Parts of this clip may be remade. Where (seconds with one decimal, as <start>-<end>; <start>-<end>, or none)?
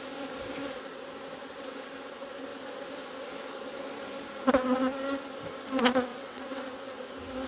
6.1-6.6